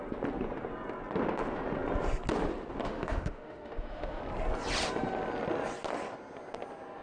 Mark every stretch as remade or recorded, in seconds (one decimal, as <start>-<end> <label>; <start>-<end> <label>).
0.0-2.8 recorded; 2.8-4.2 remade; 4.2-7.0 recorded